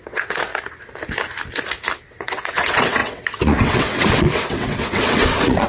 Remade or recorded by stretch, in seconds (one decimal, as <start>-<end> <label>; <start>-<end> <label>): 0.0-0.5 remade; 0.5-2.1 recorded; 2.1-5.7 remade